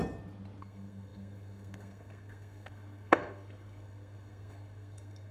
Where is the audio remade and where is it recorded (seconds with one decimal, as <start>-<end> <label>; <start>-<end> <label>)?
0.0-0.6 recorded; 0.6-5.3 remade

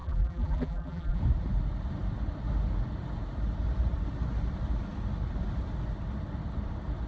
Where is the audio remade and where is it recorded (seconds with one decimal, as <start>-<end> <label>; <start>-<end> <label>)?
0.0-1.2 remade; 1.2-7.1 recorded

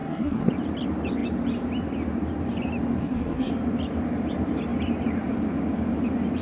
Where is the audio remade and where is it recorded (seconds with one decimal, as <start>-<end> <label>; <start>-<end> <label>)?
0.0-0.5 remade; 0.5-3.0 recorded; 3.0-3.5 remade; 3.5-6.4 recorded

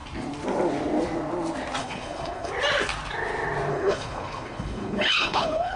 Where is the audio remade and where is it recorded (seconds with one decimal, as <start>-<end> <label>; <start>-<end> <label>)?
0.0-1.8 recorded; 1.8-2.5 remade; 2.5-3.7 recorded; 3.7-5.8 remade